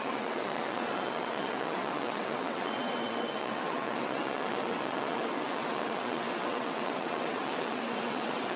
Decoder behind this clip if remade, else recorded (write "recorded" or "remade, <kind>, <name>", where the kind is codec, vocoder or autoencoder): remade, vocoder, WaveNeXt